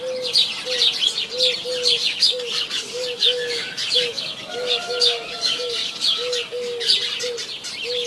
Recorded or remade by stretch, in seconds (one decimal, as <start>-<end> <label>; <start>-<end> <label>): 0.0-2.0 recorded; 2.0-6.9 remade; 6.9-8.1 recorded